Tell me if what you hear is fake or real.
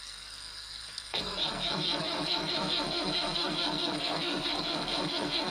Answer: fake